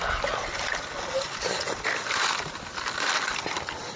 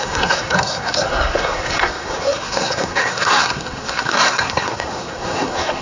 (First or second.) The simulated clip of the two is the second